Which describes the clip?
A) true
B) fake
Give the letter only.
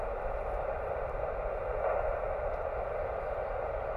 A